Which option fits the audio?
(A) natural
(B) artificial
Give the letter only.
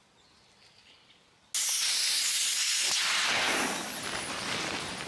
A